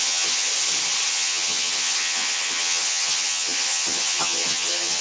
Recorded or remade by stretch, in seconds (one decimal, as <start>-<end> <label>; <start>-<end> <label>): 0.0-0.5 remade; 0.5-1.1 recorded; 1.1-5.0 remade